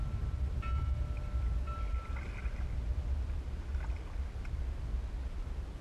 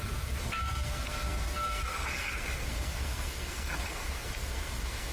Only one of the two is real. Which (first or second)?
first